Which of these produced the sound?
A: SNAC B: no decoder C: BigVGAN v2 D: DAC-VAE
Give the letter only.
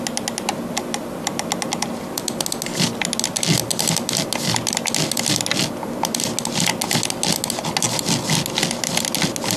B